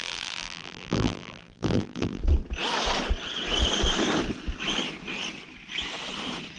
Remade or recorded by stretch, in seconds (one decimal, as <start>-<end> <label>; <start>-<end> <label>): 0.0-2.2 remade; 2.2-6.6 recorded